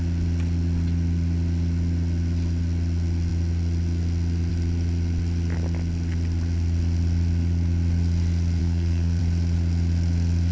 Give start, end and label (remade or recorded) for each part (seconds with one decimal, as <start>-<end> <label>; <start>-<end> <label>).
0.0-8.6 recorded; 8.6-9.2 remade; 9.2-10.5 recorded